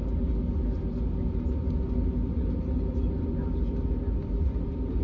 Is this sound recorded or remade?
recorded